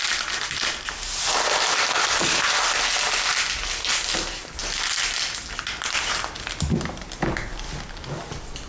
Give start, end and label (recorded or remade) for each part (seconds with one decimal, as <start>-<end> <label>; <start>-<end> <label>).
0.0-8.7 recorded